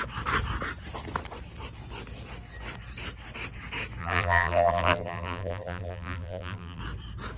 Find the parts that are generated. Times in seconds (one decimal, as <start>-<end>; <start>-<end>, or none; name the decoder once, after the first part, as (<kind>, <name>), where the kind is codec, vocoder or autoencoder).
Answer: 4.0-6.8 (vocoder, BigVGAN v2)